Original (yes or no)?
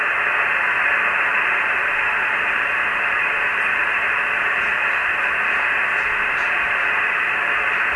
no